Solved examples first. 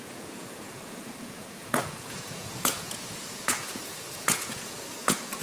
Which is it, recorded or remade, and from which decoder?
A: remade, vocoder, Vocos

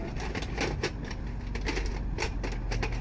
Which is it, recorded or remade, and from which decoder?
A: recorded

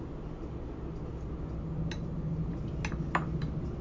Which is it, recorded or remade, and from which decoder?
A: recorded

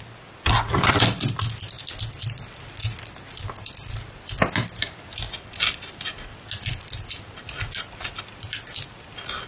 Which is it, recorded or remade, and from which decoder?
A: recorded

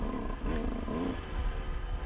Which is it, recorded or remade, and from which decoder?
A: recorded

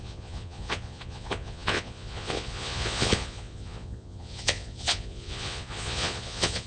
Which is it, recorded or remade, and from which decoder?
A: remade, vocoder, Vocos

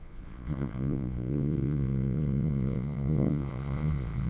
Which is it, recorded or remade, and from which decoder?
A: remade, vocoder, Vocos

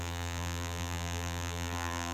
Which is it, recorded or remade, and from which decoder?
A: remade, vocoder, BigVGAN v2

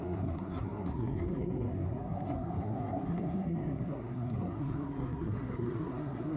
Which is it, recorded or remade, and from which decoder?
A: remade, codec, SNAC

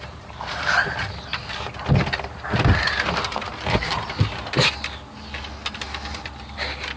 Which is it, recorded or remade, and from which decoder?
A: recorded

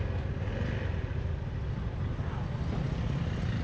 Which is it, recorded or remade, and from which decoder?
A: recorded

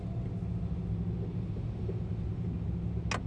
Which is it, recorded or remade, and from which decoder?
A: recorded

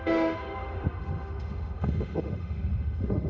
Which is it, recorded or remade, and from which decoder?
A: remade, autoencoder, DAC-VAE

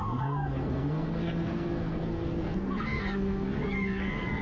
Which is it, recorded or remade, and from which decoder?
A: remade, codec, SNAC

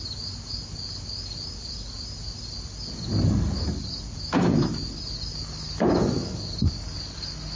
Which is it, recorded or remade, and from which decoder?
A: recorded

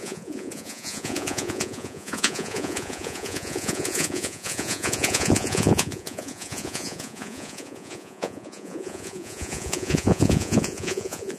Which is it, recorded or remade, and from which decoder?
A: remade, vocoder, Vocos